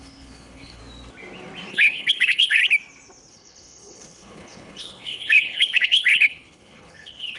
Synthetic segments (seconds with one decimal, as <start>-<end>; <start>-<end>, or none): 0.0-0.8; 1.7-2.6; 3.3-7.4